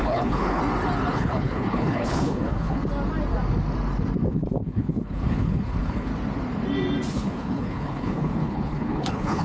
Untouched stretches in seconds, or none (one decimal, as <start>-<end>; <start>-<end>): 0.6-1.1; 2.8-4.3; 6.1-7.1

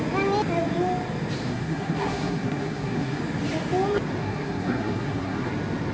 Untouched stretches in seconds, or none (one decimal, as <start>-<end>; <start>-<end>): 0.0-1.5; 3.2-4.2; 5.5-5.9